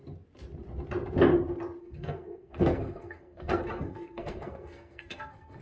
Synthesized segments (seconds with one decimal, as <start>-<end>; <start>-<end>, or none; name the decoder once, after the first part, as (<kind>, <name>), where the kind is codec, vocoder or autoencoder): 1.8-5.6 (codec, SNAC)